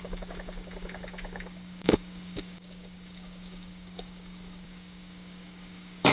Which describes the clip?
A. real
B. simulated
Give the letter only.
B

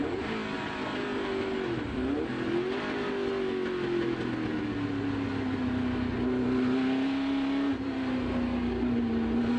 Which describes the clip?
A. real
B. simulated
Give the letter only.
A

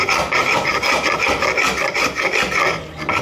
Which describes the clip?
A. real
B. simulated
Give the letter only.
A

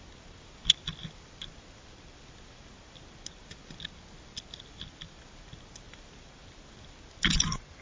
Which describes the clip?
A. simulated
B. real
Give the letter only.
B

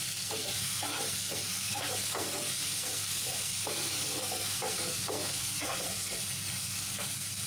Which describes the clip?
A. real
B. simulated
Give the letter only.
B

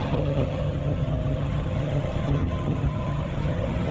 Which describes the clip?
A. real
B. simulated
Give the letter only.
B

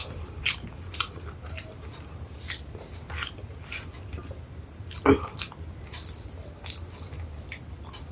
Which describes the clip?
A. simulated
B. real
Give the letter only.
B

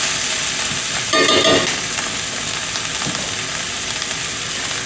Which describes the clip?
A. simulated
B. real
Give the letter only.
B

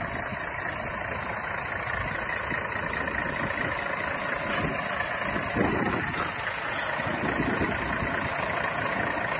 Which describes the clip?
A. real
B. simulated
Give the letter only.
A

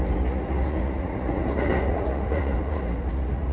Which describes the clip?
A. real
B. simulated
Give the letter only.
B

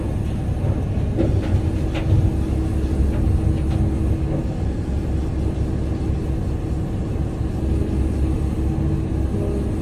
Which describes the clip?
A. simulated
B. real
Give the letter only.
B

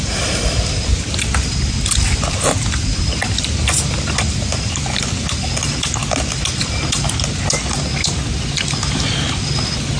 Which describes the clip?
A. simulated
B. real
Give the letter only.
B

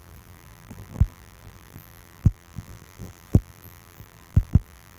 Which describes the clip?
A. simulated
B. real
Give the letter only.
A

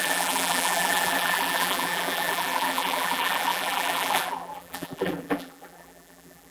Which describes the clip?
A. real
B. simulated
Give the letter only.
B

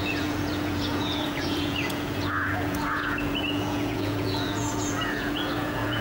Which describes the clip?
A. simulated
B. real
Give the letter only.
A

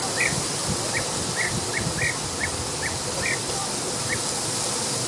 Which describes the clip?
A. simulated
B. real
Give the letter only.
B